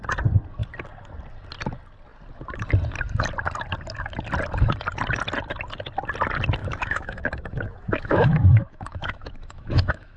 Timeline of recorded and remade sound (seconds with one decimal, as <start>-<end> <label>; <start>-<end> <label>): 0.0-6.6 recorded; 6.6-10.2 remade